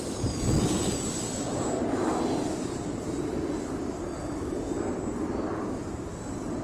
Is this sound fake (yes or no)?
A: no